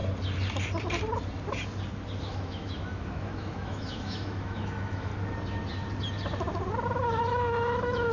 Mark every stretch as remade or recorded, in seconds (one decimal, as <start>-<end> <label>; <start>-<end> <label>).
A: 0.0-2.2 recorded; 2.2-5.1 remade; 5.1-7.2 recorded; 7.2-8.1 remade